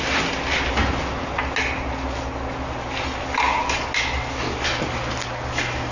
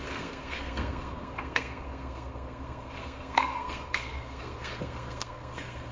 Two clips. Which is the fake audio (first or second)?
second